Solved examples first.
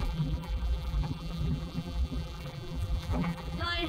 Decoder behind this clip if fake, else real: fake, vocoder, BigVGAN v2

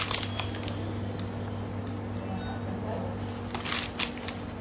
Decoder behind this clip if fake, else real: real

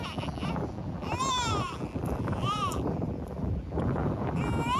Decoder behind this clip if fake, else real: fake, vocoder, BigVGAN v2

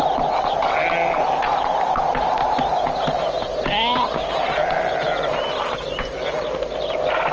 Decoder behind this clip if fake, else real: real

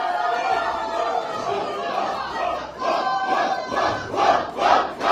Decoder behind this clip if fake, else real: real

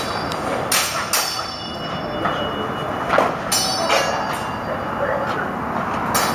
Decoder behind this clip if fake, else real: real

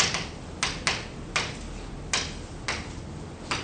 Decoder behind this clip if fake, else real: real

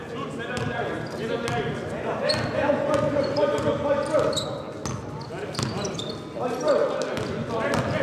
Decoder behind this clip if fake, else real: real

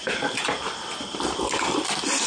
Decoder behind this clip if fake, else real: fake, vocoder, BigVGAN v2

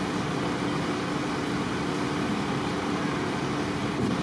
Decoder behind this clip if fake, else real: real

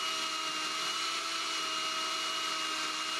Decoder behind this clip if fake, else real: real